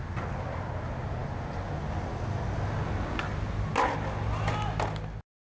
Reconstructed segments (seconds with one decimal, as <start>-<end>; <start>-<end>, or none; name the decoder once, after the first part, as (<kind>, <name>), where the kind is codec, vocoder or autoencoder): none